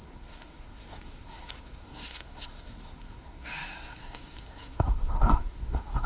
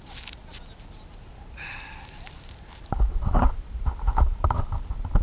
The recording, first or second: second